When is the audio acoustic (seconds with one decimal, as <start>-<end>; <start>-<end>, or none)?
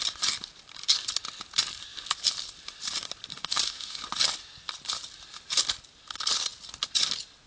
0.0-3.3; 4.0-7.5